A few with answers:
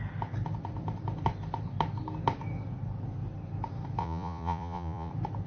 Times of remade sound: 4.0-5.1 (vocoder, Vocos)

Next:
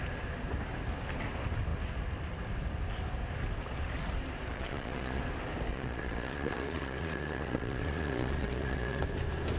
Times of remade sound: 4.5-5.2 (vocoder, Vocos); 5.7-9.0

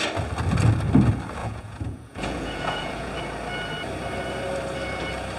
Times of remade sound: 1.4-3.1 (vocoder, Vocos)